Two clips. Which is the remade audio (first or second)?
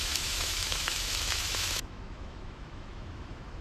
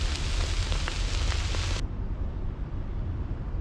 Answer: first